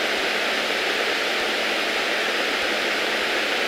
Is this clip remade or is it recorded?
recorded